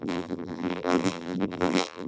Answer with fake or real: fake